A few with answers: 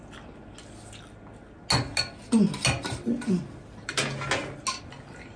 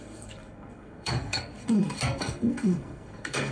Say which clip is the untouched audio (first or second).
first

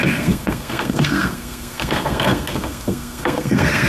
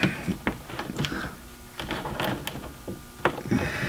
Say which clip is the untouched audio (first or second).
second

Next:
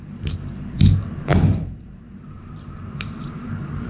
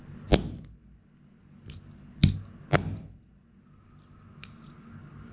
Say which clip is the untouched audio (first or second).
second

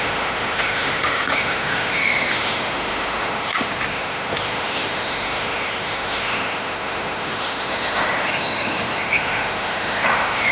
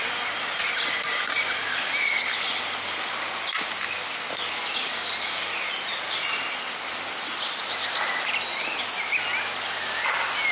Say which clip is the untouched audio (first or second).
second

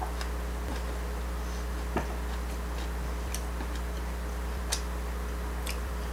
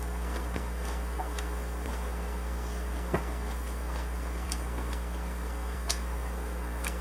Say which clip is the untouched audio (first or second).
first